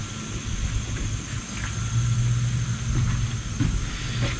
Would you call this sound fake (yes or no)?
no